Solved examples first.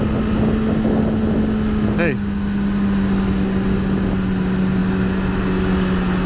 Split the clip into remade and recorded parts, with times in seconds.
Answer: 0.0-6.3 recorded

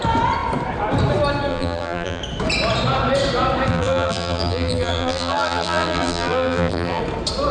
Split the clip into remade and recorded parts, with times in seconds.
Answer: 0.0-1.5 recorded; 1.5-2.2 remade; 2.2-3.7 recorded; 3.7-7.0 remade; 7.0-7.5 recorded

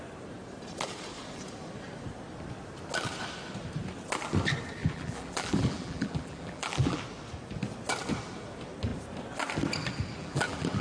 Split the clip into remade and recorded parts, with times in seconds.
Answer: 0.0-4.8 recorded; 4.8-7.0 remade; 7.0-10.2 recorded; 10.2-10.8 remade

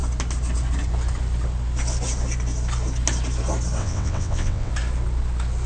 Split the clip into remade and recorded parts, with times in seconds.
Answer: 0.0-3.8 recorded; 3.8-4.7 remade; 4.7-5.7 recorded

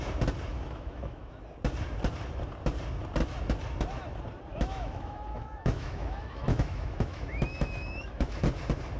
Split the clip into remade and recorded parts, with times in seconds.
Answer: 0.0-0.5 recorded; 0.5-1.4 remade; 1.4-4.5 recorded; 4.5-8.4 remade; 8.4-9.0 recorded